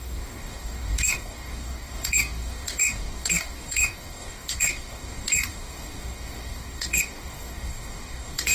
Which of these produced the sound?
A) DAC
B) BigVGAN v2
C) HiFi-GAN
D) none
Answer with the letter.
A